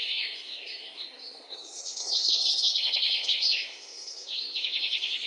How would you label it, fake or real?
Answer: fake